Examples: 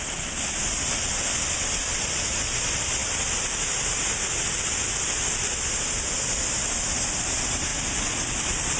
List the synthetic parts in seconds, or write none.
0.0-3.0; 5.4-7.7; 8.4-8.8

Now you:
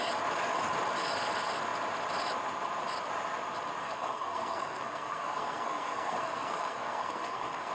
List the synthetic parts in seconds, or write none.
3.8-7.7

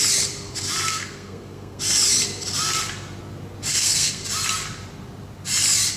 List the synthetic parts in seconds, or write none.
0.9-1.8; 3.7-4.2